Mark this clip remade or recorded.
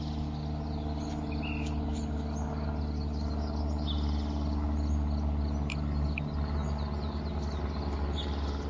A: recorded